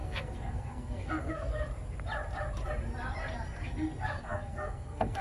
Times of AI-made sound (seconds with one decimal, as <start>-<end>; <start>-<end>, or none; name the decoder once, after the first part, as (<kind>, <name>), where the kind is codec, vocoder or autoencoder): 0.0-1.5 (codec, SNAC); 4.2-5.2